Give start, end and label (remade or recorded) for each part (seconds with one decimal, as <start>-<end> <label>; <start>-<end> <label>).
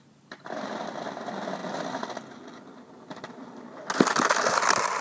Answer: 0.0-5.0 recorded